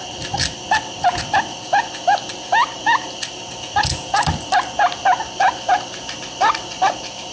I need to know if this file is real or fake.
real